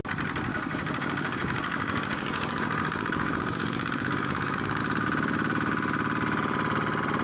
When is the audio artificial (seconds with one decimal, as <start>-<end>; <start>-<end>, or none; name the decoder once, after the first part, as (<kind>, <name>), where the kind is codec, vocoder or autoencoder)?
0.5-4.8 (codec, DAC)